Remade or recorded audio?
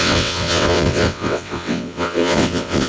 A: remade